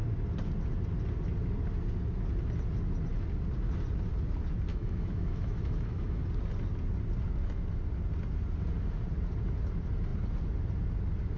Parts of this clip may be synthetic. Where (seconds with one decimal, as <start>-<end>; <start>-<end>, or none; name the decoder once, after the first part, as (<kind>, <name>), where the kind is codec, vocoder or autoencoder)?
4.7-6.2 (autoencoder, DAC-VAE)